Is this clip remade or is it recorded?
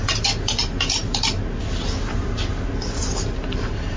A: recorded